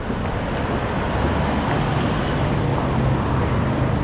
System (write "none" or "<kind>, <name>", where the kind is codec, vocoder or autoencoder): none